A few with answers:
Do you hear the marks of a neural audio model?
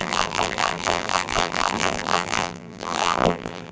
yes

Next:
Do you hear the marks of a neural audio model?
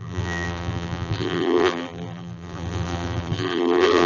yes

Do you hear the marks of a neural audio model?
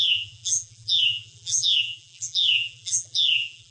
yes